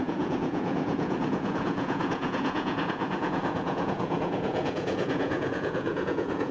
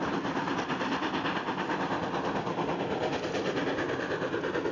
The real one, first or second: second